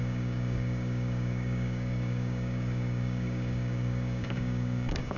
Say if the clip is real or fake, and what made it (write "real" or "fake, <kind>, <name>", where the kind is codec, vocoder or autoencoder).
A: fake, codec, DAC